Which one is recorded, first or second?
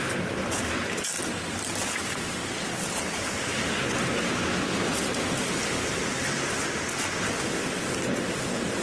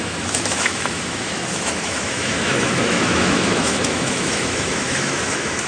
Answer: first